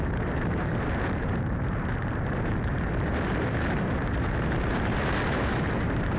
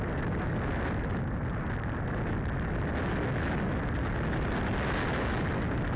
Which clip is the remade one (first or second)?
first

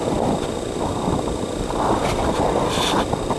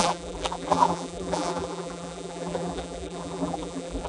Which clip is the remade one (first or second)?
second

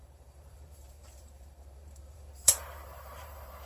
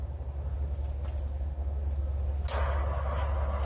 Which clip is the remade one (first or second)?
first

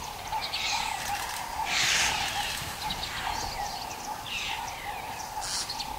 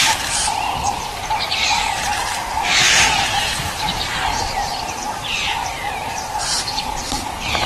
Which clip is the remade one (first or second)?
second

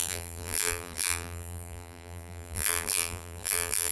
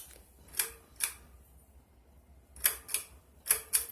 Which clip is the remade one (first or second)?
first